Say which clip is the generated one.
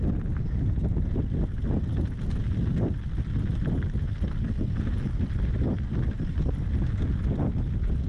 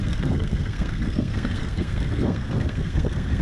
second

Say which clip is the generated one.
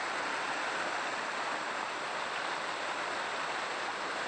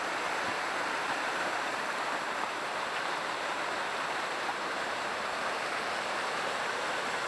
second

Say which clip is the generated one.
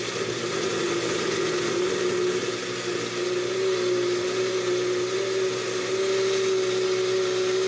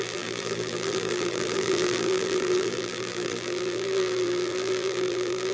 second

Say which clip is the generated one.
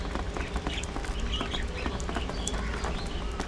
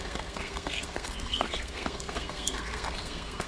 second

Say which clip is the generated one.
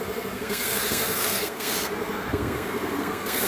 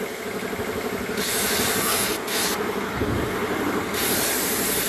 first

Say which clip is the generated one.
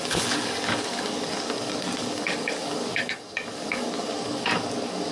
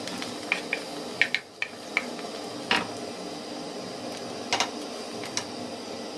first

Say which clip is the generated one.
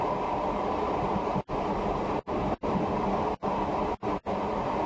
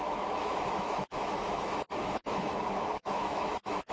second